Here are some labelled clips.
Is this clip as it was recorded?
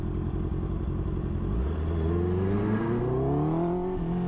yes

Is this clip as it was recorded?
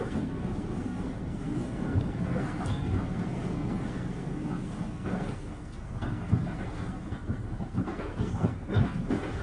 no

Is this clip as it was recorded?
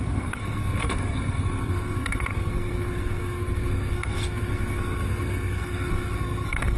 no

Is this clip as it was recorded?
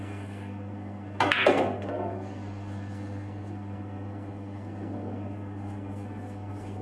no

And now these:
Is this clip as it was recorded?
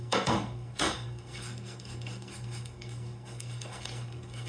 no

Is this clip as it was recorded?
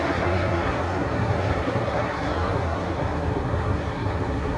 no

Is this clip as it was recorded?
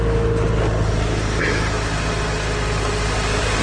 yes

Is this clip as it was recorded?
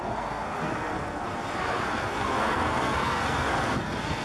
no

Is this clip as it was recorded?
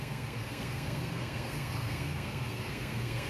no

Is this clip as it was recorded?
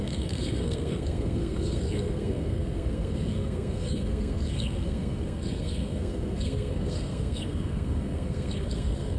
no